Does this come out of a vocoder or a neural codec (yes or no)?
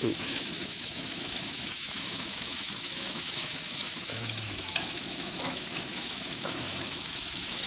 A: yes